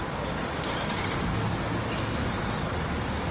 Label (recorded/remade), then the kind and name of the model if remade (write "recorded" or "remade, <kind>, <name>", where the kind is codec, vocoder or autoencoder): recorded